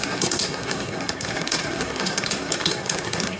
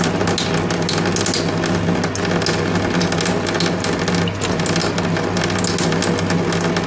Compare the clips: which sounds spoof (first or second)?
first